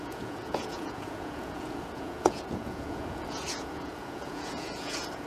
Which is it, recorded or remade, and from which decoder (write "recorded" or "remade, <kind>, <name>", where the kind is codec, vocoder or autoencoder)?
remade, vocoder, Vocos